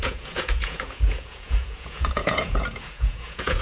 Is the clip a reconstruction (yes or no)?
yes